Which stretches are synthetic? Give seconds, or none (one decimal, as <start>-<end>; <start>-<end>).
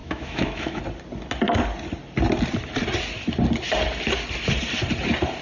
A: 0.0-0.8